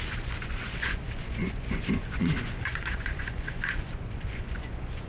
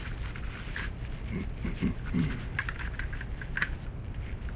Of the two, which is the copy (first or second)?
first